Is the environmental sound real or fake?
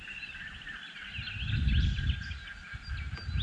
real